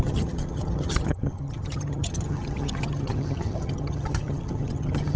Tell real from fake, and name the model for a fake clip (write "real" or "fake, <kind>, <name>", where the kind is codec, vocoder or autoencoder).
fake, vocoder, HiFi-GAN